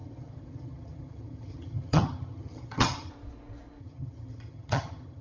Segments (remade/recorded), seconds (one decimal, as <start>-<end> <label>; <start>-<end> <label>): 0.0-3.1 remade; 3.1-3.8 recorded; 3.8-5.2 remade